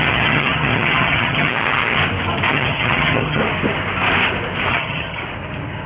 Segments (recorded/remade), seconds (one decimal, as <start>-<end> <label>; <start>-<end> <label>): 0.0-2.0 remade; 2.0-2.5 recorded; 2.5-3.4 remade; 3.4-4.7 recorded; 4.7-5.2 remade; 5.2-5.9 recorded